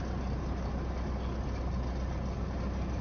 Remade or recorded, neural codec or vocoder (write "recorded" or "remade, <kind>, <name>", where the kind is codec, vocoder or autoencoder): recorded